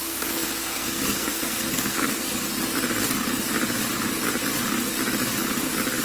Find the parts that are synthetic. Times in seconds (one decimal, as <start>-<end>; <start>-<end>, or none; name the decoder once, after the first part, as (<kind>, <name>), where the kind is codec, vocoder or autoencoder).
0.0-2.3 (codec, SNAC)

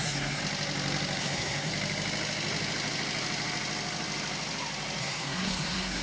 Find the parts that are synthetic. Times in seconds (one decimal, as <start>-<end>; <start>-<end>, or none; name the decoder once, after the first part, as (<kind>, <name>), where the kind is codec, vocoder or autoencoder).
0.0-0.4 (codec, SNAC); 1.2-1.7; 5.0-6.0